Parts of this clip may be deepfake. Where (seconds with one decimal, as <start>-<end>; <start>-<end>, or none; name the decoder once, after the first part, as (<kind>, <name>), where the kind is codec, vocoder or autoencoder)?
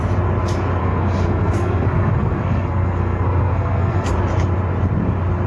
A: 0.8-4.1 (codec, SNAC)